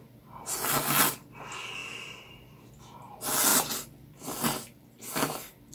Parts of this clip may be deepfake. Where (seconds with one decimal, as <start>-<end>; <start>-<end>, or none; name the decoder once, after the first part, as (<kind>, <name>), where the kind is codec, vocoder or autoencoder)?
1.8-2.6 (vocoder, BigVGAN v2); 3.5-5.7